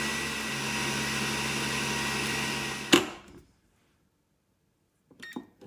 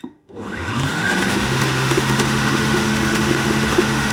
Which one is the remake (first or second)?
second